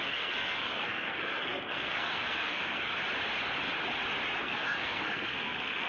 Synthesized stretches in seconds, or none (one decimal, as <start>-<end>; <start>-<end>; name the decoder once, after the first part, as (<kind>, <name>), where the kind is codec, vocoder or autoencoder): 0.0-2.9 (codec, SNAC); 4.4-5.9